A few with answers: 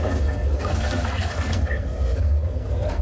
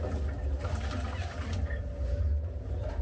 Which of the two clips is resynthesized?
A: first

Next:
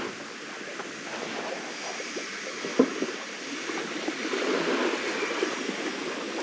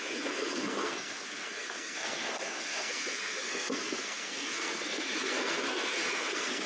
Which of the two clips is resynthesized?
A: second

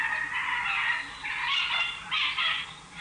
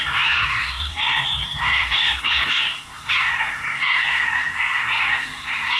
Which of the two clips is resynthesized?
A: second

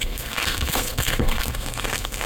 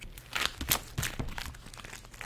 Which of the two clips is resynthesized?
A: first